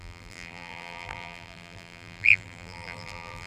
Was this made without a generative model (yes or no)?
no